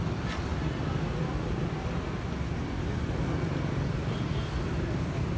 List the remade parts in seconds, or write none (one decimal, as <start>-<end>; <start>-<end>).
none